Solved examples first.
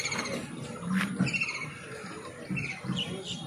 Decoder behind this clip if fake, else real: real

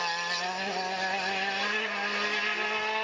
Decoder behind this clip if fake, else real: real